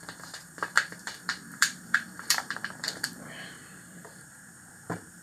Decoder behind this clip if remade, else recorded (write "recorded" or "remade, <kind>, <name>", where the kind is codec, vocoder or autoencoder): remade, vocoder, BigVGAN v2